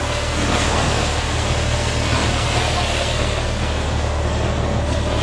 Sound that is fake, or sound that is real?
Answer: fake